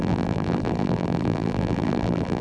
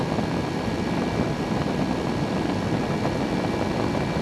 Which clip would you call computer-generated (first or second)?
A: first